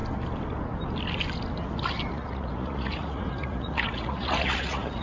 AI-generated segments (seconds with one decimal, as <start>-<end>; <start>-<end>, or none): 2.1-5.0